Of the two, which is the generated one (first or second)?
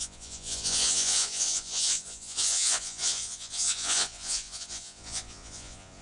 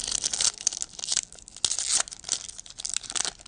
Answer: first